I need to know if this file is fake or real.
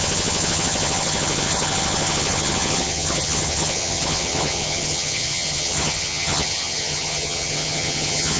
fake